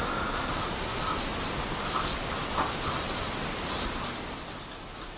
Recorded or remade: recorded